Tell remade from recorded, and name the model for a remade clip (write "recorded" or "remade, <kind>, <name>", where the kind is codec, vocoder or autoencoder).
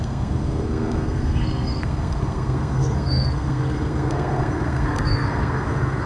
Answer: remade, codec, SNAC